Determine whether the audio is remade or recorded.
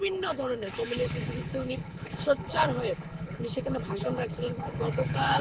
remade